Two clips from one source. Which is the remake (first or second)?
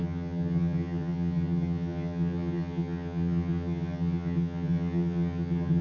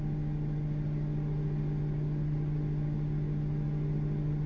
first